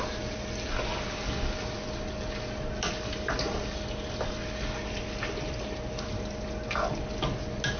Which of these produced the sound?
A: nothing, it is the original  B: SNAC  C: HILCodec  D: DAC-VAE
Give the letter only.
A